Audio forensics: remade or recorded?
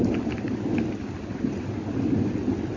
recorded